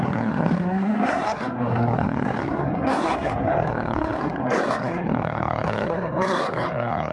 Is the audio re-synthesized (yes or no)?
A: yes